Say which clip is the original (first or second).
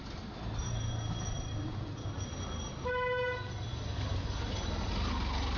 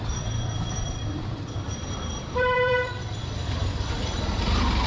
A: first